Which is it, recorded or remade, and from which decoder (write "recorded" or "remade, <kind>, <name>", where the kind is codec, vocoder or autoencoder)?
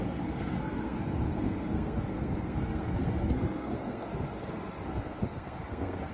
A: remade, codec, SNAC